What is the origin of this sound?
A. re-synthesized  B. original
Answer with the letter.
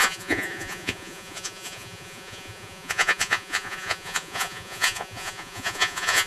A